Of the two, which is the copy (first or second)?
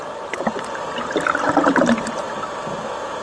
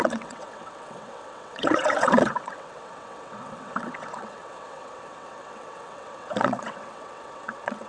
second